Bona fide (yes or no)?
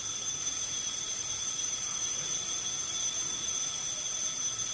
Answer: yes